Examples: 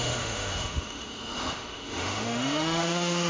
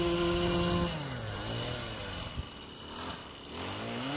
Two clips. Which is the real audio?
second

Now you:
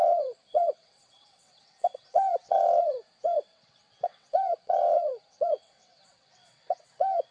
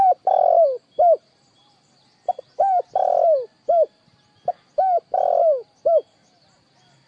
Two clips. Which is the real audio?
second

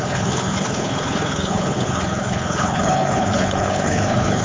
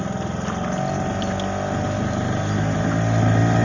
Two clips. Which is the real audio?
second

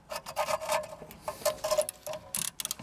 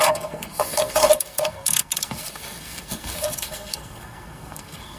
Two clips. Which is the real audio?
first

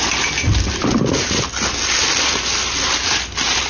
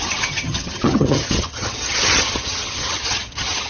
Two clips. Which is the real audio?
first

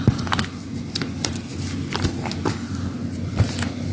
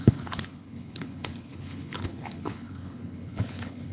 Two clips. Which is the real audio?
first